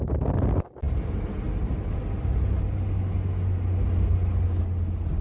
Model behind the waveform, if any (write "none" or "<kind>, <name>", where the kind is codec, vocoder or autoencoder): none